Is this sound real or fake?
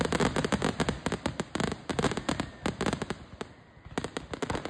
real